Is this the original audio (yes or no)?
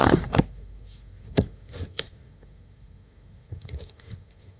no